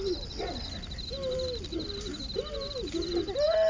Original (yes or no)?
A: yes